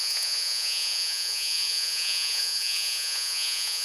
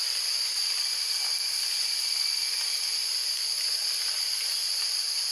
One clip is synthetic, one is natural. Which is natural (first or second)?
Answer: second